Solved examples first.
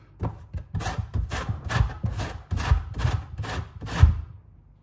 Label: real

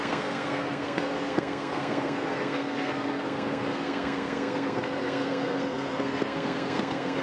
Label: fake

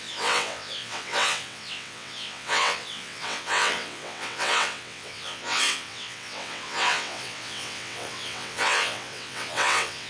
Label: fake